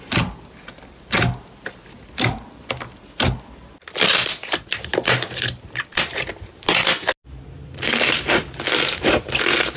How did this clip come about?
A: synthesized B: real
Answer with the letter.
B